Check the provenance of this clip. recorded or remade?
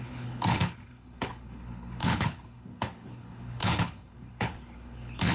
remade